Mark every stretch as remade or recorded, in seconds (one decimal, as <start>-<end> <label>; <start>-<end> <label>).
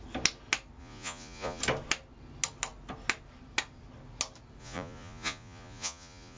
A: 0.0-0.8 recorded; 0.8-1.6 remade; 1.6-4.6 recorded; 4.6-6.4 remade